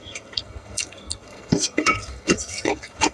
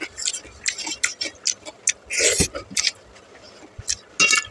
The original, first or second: second